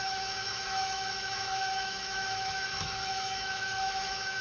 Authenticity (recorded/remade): remade